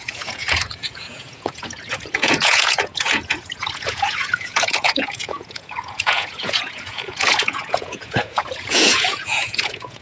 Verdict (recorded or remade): remade